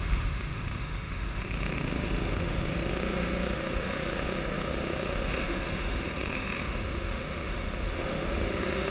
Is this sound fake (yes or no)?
yes